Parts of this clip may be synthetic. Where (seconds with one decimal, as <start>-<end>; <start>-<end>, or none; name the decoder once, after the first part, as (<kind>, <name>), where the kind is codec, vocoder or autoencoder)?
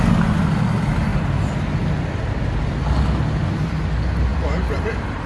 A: 4.3-5.3 (vocoder, BigVGAN v2)